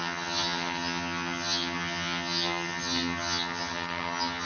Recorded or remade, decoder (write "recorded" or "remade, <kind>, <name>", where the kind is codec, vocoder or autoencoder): remade, vocoder, HiFi-GAN